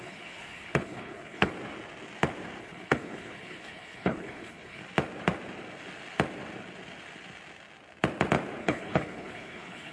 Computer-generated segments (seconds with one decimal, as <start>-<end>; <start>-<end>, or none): 0.0-1.5; 2.6-4.8; 8.6-9.9